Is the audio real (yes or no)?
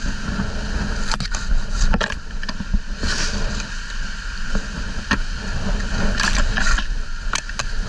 yes